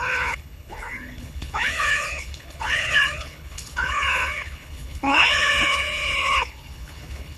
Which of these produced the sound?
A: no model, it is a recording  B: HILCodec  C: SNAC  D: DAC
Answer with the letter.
B